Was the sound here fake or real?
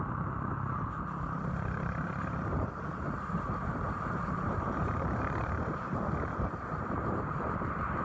fake